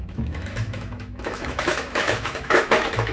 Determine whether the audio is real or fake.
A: fake